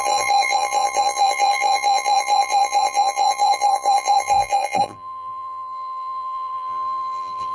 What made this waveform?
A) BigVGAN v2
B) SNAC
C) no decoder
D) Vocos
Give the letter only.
A